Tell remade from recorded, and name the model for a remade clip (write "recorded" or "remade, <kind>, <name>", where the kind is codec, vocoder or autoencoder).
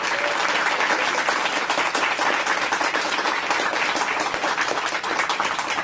recorded